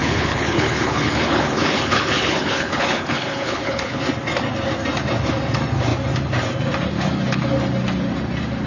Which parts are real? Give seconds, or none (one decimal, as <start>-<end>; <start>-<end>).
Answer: 4.0-8.7